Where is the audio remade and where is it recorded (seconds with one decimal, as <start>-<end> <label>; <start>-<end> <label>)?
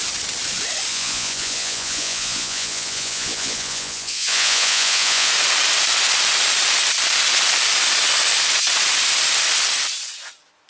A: 0.0-0.9 recorded; 0.9-5.3 remade; 5.3-10.7 recorded